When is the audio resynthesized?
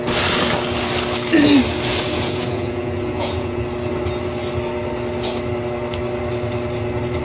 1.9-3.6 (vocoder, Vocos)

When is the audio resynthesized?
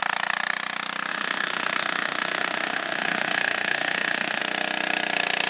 1.1-4.4 (autoencoder, DAC-VAE)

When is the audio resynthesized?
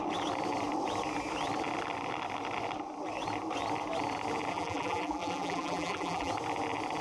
4.5-6.3 (vocoder, BigVGAN v2)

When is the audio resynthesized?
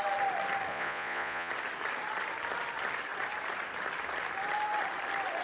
0.7-1.5 (vocoder, Vocos)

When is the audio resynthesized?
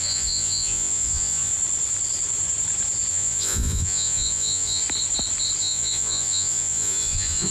0.0-1.5 (vocoder, Vocos); 3.1-4.8; 5.6-7.5